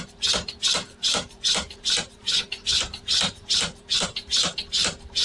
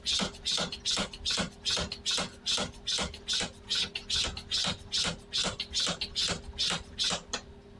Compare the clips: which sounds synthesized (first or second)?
first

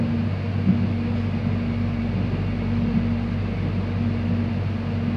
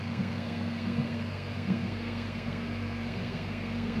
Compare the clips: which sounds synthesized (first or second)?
second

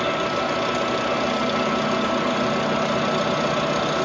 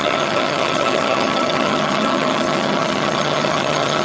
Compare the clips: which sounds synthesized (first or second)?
second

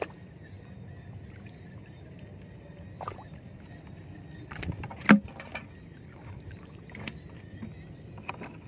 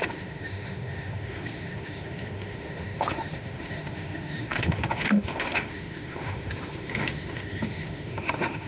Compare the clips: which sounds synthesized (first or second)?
second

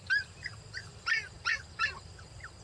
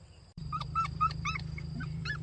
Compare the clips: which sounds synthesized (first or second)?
second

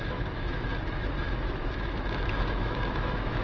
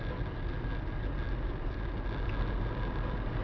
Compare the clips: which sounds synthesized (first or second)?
first